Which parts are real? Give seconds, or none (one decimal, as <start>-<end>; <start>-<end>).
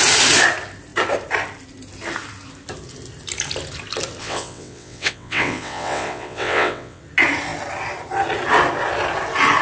0.0-4.2; 7.0-9.6